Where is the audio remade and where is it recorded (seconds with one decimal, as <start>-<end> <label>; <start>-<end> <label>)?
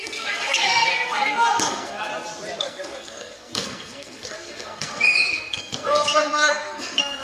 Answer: 0.0-2.1 remade; 2.1-2.6 recorded; 2.6-7.2 remade